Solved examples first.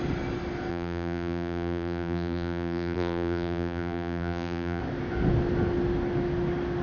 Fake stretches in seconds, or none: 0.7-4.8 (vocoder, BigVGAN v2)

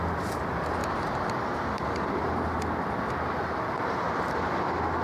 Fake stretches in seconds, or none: 0.8-2.2 (vocoder, BigVGAN v2)